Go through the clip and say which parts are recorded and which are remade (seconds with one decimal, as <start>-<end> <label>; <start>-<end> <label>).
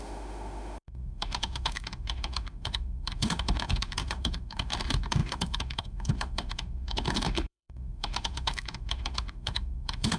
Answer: 0.0-10.2 remade